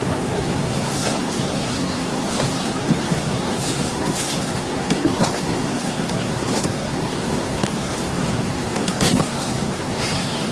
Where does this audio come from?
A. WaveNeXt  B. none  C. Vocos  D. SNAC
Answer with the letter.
D